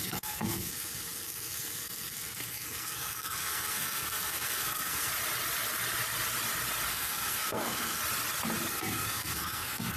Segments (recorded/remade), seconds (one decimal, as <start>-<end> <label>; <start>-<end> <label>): 0.0-5.1 remade; 5.1-6.9 recorded; 6.9-8.0 remade; 8.0-8.7 recorded; 8.7-10.0 remade